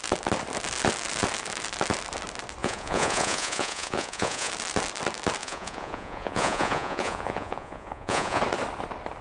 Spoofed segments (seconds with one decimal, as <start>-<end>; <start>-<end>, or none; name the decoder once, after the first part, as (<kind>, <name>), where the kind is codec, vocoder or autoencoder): 2.6-4.5 (vocoder, Vocos); 5.4-8.4

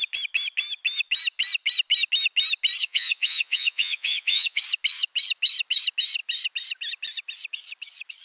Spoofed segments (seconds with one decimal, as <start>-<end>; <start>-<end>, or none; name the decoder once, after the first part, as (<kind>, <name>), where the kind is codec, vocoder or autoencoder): 2.8-4.6 (vocoder, Vocos)

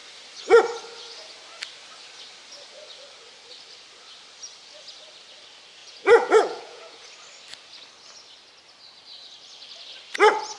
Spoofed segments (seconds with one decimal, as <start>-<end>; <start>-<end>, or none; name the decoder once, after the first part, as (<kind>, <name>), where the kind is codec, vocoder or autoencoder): 5.8-7.1 (vocoder, Vocos)

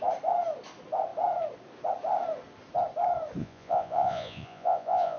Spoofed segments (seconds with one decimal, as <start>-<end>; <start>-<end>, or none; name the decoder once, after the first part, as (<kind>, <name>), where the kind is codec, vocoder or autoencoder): 3.4-5.2 (vocoder, Vocos)

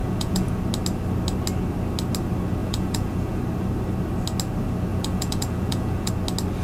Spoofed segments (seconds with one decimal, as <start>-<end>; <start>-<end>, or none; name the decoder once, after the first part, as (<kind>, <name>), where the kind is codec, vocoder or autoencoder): 0.0-0.6 (vocoder, Vocos); 2.6-3.4; 4.9-6.1

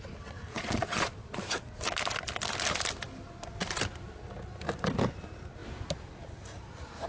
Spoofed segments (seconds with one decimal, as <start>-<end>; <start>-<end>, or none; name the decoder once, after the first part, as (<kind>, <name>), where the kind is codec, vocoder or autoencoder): 0.5-1.7 (vocoder, Vocos)

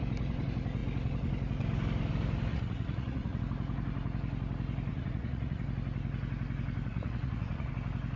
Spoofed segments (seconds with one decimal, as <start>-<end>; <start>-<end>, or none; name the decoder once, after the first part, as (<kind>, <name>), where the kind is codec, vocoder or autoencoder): 2.5-3.4 (vocoder, Vocos); 4.9-5.6; 6.9-7.7